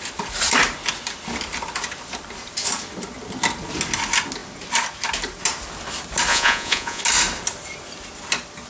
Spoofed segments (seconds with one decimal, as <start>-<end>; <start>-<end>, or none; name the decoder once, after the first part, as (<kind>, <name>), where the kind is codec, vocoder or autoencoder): 6.3-7.0 (vocoder, Vocos)